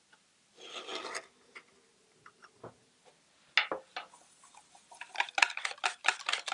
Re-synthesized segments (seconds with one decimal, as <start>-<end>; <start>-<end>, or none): none

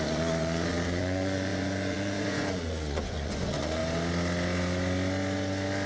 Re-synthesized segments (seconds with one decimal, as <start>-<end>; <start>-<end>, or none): 0.0-3.8

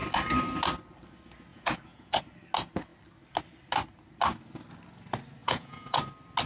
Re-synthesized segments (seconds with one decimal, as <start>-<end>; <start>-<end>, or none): 1.5-2.2; 5.4-6.0

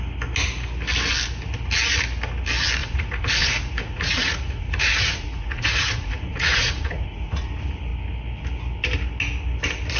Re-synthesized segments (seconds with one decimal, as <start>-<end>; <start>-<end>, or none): 2.8-7.5

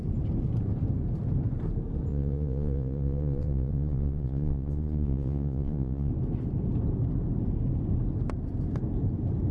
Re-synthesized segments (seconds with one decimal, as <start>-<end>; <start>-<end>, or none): 2.1-6.1